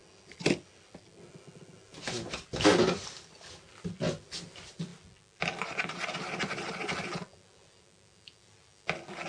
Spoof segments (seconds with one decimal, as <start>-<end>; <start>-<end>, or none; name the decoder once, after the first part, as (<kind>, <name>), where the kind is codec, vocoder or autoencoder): none